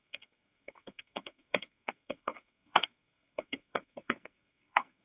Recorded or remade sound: remade